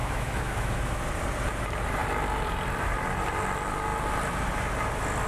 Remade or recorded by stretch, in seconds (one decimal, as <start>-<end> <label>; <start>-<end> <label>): 0.0-1.0 remade; 1.0-5.3 recorded